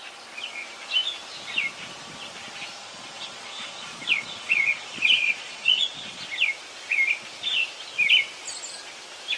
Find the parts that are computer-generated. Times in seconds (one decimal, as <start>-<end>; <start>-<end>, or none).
2.8-6.2